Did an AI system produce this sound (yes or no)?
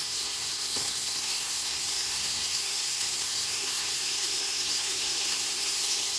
yes